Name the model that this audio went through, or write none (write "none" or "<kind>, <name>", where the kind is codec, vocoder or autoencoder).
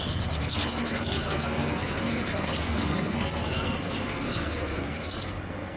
codec, SNAC